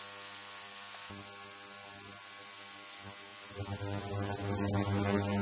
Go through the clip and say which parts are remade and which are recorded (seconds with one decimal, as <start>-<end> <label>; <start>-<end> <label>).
0.0-5.4 recorded

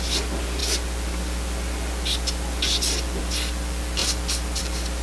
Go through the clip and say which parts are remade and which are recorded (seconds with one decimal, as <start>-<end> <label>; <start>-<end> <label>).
0.0-5.0 recorded